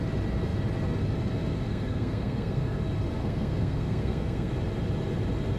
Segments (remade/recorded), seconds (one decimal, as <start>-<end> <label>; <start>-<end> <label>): 0.0-1.5 recorded; 1.5-2.8 remade; 2.8-3.2 recorded; 3.2-4.5 remade; 4.5-5.6 recorded